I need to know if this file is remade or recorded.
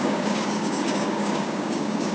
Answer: remade